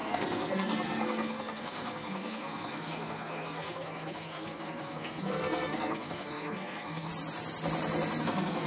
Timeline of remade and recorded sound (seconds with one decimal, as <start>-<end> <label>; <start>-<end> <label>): 0.0-7.1 remade; 7.1-8.2 recorded; 8.2-8.7 remade